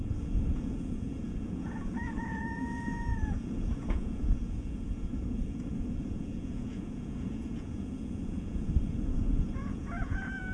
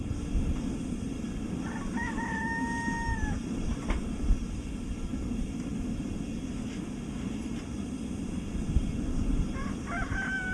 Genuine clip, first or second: second